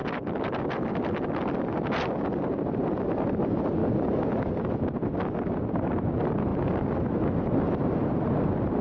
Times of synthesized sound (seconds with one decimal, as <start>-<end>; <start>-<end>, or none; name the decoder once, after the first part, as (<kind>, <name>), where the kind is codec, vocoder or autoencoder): none